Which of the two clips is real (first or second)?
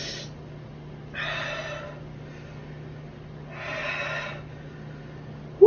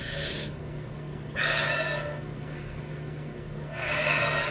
first